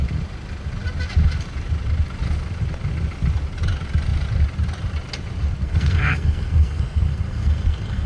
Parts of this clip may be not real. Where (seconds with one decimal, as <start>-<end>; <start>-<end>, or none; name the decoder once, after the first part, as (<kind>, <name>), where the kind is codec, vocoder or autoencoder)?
5.6-8.1 (codec, SNAC)